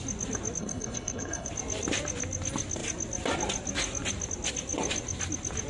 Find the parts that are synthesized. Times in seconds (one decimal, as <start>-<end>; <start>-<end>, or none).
0.6-1.5